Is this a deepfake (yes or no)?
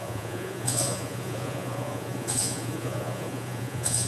yes